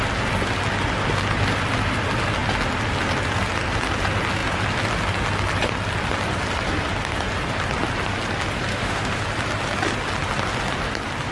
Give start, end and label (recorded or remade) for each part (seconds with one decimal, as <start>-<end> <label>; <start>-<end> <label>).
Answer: 0.0-8.7 recorded; 8.7-9.2 remade; 9.2-11.3 recorded